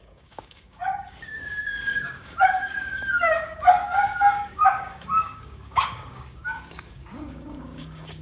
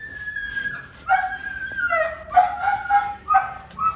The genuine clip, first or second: second